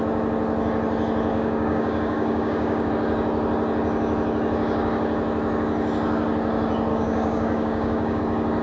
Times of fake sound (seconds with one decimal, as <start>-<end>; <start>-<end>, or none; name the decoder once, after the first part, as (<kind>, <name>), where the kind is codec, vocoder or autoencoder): 1.3-2.9 (codec, DAC); 6.9-8.2